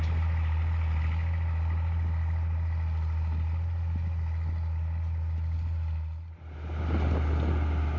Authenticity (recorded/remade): recorded